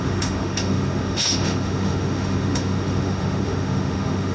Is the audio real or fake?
fake